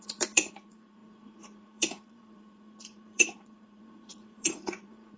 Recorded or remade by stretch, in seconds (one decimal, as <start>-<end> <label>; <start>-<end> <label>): 0.0-5.2 remade